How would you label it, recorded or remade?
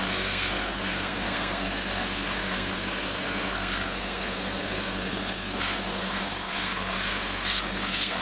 remade